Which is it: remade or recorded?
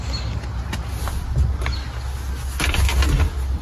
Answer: recorded